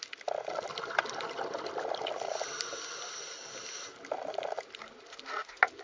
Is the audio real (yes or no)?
yes